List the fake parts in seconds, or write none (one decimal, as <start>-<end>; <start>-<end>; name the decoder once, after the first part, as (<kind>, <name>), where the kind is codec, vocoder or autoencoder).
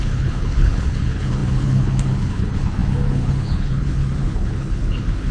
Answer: 0.0-5.3 (codec, HILCodec)